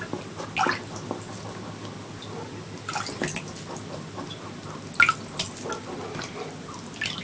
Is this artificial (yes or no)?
no